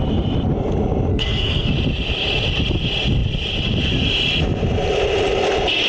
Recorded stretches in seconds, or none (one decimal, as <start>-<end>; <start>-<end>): 0.0-1.1; 1.7-5.9